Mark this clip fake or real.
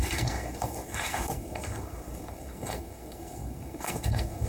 fake